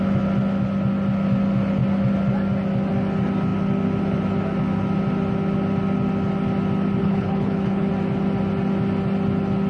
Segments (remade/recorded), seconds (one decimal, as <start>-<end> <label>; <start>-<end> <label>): 0.0-7.0 recorded; 7.0-7.9 remade; 7.9-9.7 recorded